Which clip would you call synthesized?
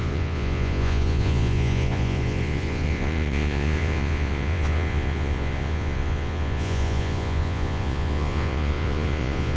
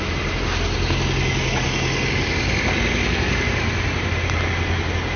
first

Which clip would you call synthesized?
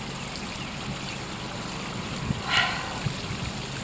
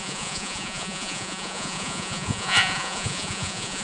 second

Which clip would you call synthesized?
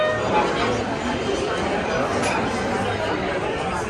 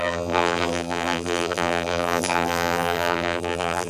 second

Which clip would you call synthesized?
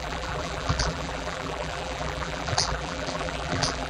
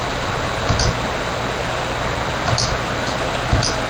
first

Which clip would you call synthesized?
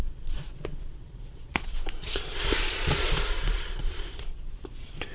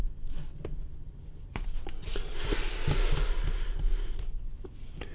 first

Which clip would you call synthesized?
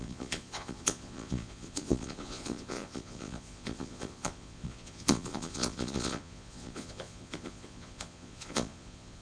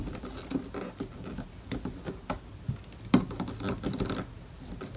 first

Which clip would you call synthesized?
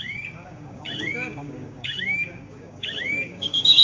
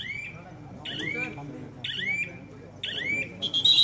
first